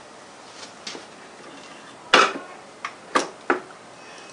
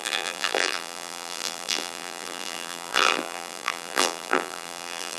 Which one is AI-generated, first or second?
second